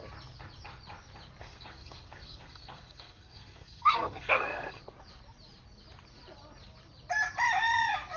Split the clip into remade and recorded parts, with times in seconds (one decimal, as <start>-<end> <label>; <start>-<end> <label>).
0.0-1.4 recorded; 1.4-4.8 remade; 4.8-8.2 recorded